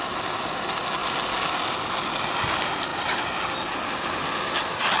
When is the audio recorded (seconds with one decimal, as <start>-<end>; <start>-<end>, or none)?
0.0-5.0